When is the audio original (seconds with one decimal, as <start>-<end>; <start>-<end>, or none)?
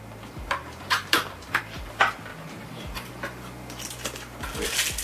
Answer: 0.0-0.6; 1.6-2.3; 3.1-5.0